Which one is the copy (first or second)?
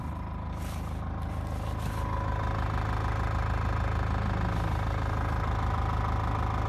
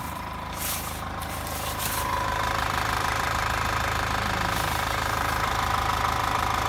second